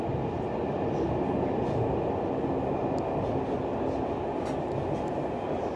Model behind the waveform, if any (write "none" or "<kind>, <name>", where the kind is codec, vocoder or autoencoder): none